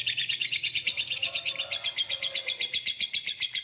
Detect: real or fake fake